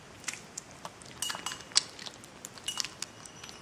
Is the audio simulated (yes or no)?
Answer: no